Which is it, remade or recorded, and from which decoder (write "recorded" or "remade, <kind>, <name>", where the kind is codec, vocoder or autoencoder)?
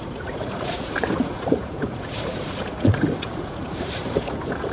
remade, vocoder, Vocos